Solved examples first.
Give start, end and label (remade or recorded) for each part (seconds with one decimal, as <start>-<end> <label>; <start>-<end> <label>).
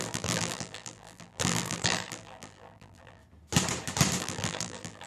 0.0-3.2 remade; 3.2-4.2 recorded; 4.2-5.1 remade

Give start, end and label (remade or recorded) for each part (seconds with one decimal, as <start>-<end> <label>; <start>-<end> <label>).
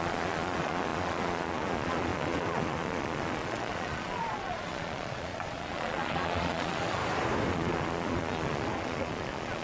0.0-7.0 remade; 7.0-7.5 recorded; 7.5-9.6 remade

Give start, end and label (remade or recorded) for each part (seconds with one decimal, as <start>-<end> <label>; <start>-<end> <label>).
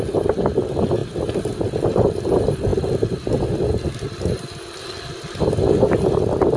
0.0-6.6 recorded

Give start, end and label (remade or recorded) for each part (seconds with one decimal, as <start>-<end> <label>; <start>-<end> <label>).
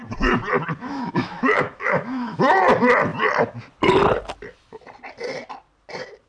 0.0-0.8 recorded; 0.8-2.4 remade; 2.4-6.3 recorded